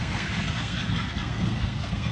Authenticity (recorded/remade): remade